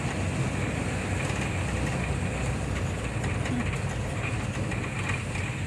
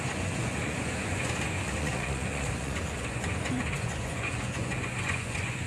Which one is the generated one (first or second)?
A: second